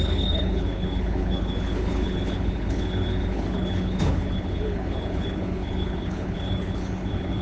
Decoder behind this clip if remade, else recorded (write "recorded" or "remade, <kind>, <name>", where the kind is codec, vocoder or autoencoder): remade, codec, HILCodec